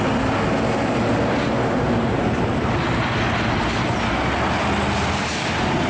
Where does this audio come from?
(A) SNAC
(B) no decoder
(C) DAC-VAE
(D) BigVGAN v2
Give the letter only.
B